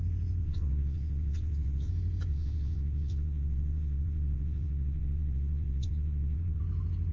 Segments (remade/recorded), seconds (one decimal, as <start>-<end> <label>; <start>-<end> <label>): 0.0-0.4 recorded; 0.4-1.9 remade; 1.9-2.3 recorded; 2.3-6.6 remade; 6.6-7.1 recorded